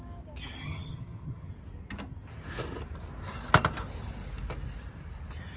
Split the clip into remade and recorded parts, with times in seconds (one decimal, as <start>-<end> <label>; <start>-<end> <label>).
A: 0.0-0.6 recorded; 0.6-1.5 remade; 1.5-5.6 recorded